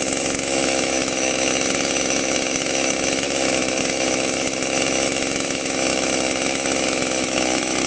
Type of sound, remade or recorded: remade